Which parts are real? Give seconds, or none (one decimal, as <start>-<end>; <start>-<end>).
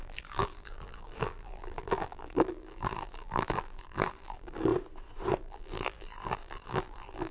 4.7-5.4